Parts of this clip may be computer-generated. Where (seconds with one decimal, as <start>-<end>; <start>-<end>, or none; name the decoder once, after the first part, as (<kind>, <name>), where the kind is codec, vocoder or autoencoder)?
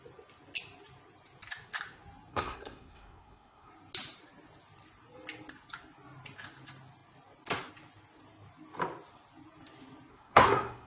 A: 2.3-3.7 (codec, SNAC); 10.1-10.9